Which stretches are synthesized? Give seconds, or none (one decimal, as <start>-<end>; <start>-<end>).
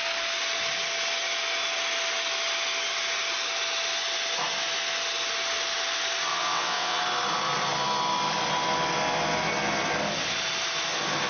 6.3-7.0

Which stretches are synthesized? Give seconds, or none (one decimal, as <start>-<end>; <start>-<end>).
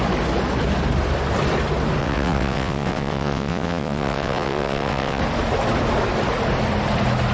2.0-5.2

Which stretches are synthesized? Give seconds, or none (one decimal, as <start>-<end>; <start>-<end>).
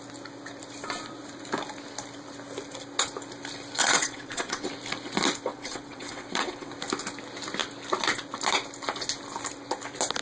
3.8-4.7; 5.5-6.7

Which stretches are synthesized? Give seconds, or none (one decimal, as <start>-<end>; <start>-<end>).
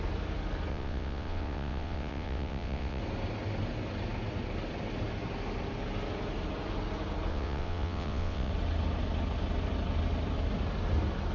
0.7-3.0; 7.3-8.5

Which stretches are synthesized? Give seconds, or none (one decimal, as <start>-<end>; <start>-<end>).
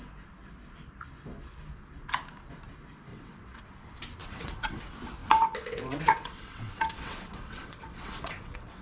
3.1-3.6; 4.2-4.8; 5.2-8.8